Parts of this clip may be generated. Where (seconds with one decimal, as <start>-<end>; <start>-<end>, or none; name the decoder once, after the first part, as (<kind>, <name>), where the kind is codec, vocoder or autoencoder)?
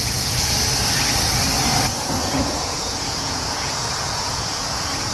0.0-0.5 (vocoder, Vocos); 1.9-5.1